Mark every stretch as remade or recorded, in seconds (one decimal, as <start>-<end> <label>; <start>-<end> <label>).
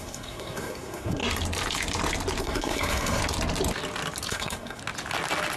0.0-1.2 remade; 1.2-2.4 recorded; 2.4-3.2 remade; 3.2-4.3 recorded; 4.3-4.8 remade; 4.8-5.6 recorded